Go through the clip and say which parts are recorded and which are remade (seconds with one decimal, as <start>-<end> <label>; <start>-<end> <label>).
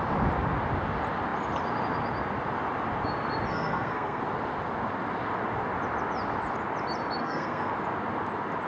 0.0-3.5 recorded; 3.5-4.2 remade; 4.2-7.2 recorded; 7.2-7.7 remade; 7.7-8.7 recorded